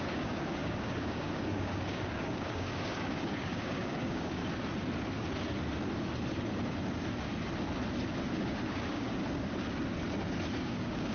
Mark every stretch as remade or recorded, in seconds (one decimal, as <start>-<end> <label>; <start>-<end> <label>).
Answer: 0.0-4.4 remade; 4.4-8.3 recorded; 8.3-9.1 remade; 9.1-10.6 recorded; 10.6-11.1 remade